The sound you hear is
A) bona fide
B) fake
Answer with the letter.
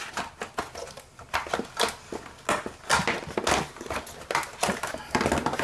A